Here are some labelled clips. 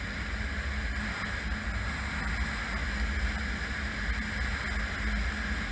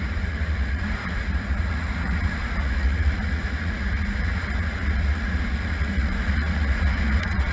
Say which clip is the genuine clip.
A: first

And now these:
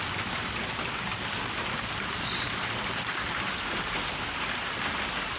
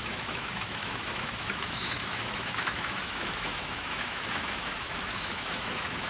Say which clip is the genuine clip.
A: first